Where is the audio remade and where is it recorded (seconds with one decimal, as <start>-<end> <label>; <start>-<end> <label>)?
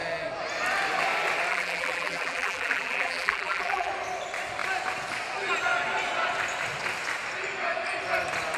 0.0-1.5 recorded; 1.5-3.9 remade; 3.9-8.6 recorded